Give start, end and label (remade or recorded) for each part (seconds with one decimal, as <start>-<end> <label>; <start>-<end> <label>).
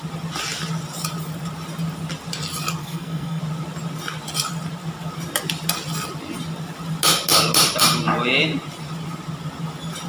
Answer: 0.0-2.8 recorded; 2.8-3.4 remade; 3.4-10.1 recorded